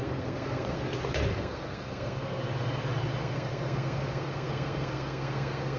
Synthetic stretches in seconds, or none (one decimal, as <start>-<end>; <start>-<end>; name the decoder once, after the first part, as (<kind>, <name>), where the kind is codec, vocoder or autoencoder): 0.0-0.8 (codec, SNAC); 1.3-2.4; 3.2-5.8